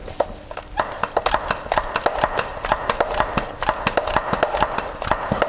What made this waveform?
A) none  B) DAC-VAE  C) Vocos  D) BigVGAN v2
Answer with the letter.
A